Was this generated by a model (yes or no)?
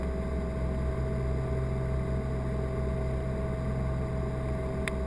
no